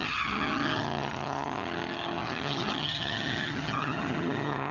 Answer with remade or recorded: remade